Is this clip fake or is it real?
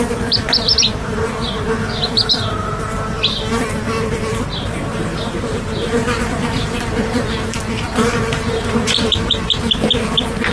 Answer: fake